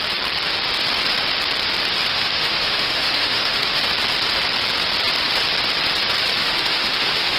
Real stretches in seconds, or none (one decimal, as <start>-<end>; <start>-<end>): 0.0-2.1; 3.8-6.4